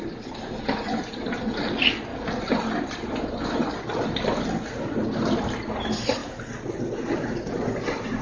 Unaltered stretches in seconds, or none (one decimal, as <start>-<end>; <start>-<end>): 0.0-8.2